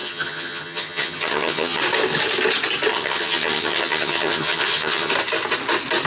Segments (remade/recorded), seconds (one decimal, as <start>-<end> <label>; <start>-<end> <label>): 0.0-1.8 remade; 1.8-2.9 recorded; 2.9-5.1 remade; 5.1-6.1 recorded